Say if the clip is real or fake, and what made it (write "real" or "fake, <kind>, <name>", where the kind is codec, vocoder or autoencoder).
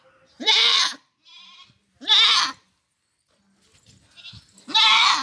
real